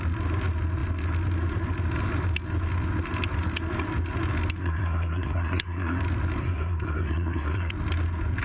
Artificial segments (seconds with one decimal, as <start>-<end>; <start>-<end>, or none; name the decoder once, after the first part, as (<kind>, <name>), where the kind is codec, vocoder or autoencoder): 4.6-6.0 (codec, SNAC); 6.4-7.7